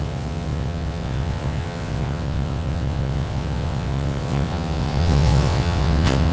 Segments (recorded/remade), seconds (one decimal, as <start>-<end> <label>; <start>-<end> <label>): 0.0-6.3 remade